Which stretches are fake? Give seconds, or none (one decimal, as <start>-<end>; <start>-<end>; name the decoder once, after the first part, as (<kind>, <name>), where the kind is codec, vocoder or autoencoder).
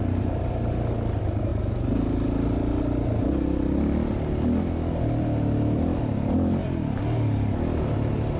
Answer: none